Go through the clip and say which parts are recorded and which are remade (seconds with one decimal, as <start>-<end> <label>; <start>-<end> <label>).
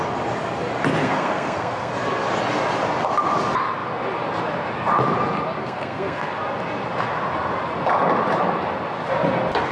0.0-1.0 recorded; 1.0-1.9 remade; 1.9-5.6 recorded; 5.6-6.3 remade; 6.3-9.7 recorded